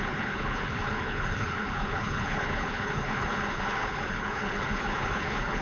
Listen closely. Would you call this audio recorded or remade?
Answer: remade